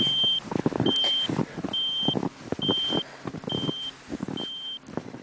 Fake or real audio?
real